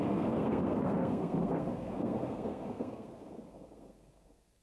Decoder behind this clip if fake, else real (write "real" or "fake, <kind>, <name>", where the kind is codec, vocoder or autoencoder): fake, codec, SNAC